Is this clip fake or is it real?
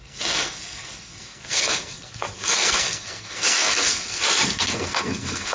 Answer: fake